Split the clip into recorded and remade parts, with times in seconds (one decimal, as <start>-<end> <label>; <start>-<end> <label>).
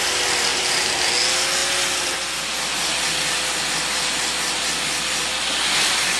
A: 0.0-0.5 recorded; 0.5-1.1 remade; 1.1-6.2 recorded